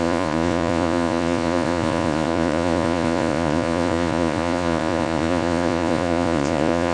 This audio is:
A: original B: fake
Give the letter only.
B